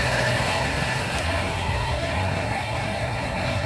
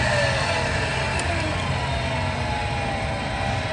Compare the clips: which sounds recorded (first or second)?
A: second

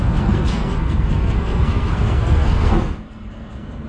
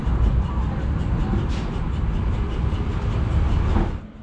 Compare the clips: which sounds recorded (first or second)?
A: second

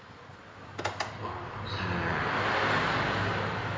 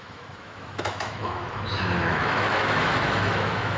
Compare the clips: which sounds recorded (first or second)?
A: first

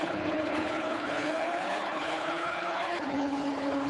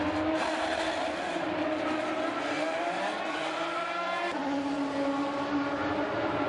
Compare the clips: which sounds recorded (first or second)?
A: second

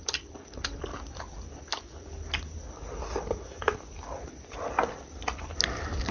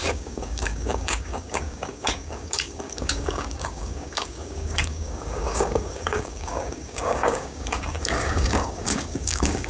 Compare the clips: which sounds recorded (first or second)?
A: first